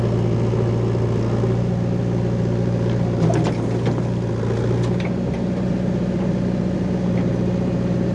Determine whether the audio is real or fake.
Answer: real